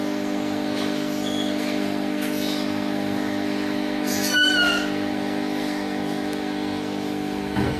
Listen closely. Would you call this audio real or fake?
fake